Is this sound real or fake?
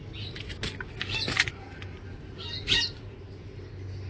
real